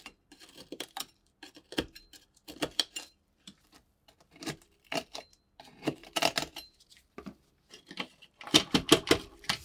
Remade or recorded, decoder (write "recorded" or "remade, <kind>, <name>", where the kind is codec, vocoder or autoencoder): remade, vocoder, BigVGAN v2